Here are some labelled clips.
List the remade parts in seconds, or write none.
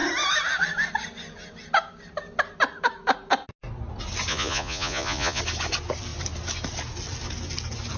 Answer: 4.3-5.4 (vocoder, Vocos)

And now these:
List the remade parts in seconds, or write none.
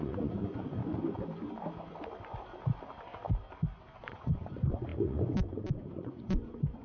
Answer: 0.0-0.8 (vocoder, Vocos); 4.0-6.8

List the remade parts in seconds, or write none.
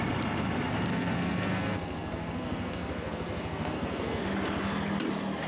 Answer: 0.9-4.2 (codec, SNAC)